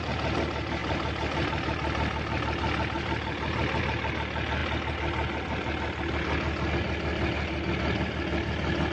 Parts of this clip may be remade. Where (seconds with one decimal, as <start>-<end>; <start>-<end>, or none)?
none